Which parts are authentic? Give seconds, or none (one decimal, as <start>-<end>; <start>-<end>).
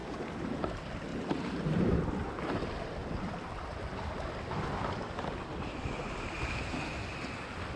0.0-7.8